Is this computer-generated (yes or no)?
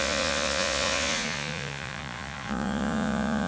yes